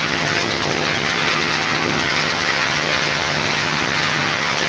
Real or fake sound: fake